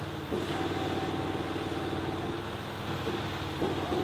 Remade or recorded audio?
recorded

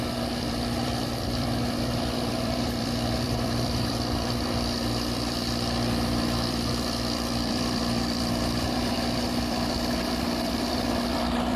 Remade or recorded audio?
remade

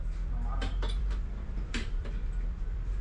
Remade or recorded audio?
remade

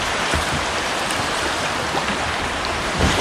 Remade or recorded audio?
remade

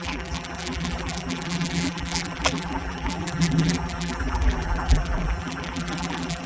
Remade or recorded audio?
remade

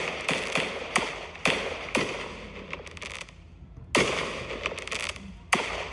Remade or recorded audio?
recorded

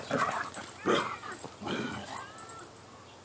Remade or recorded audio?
remade